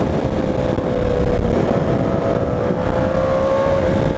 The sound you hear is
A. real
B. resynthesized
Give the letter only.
A